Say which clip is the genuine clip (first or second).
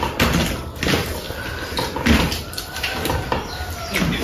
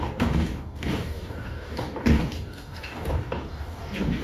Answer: first